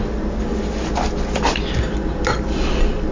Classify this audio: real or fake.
real